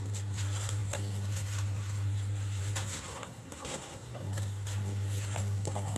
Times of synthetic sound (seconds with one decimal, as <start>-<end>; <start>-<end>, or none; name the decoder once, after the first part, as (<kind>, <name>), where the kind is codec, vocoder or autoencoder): 0.0-6.0 (codec, SNAC)